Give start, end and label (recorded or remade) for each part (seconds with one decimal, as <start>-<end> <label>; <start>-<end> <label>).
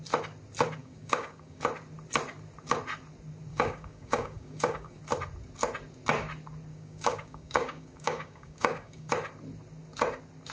0.0-0.8 recorded; 0.8-1.6 remade; 1.6-3.5 recorded; 3.5-5.0 remade; 5.0-6.7 recorded; 6.7-9.1 remade; 9.1-10.5 recorded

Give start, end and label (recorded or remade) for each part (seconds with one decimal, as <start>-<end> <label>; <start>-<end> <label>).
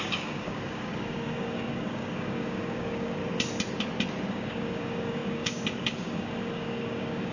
0.0-3.2 remade; 3.2-4.3 recorded; 4.3-7.3 remade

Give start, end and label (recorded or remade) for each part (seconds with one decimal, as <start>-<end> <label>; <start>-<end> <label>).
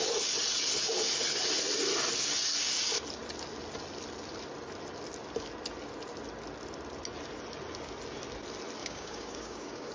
0.0-8.8 recorded; 8.8-9.9 remade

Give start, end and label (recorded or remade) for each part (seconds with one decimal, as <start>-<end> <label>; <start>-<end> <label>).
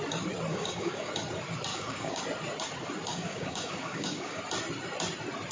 0.0-0.5 recorded; 0.5-1.1 remade; 1.1-1.7 recorded; 1.7-2.2 remade; 2.2-3.1 recorded; 3.1-4.4 remade; 4.4-5.5 recorded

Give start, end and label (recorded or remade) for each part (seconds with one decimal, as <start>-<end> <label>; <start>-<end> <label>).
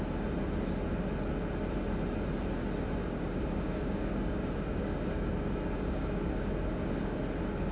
0.0-3.0 recorded; 3.0-7.2 remade; 7.2-7.7 recorded